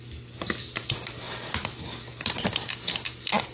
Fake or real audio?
real